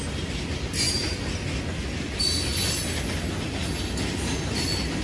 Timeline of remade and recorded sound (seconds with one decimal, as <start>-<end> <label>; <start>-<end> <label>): 0.0-5.0 recorded